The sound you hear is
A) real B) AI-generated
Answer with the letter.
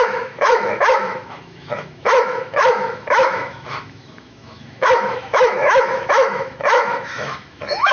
B